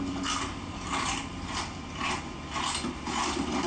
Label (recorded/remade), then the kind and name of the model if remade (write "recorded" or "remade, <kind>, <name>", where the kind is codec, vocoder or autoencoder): recorded